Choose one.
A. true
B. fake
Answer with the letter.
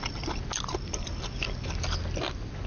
A